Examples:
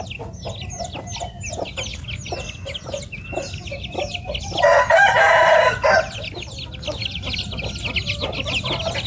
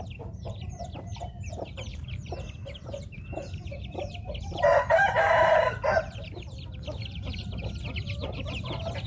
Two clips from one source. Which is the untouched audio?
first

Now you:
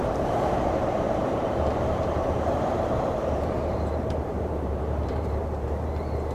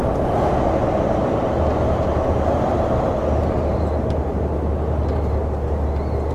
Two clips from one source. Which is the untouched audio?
second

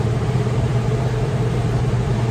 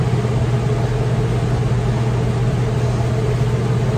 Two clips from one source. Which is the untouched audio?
second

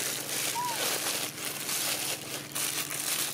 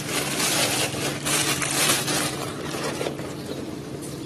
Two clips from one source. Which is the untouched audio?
first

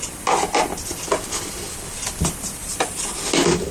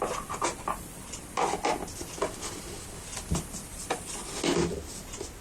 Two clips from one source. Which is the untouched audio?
second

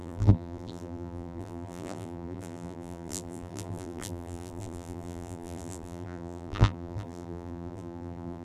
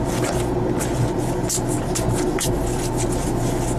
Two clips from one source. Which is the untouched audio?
second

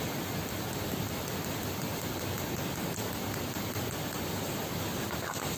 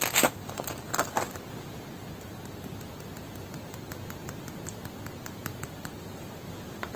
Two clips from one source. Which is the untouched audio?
second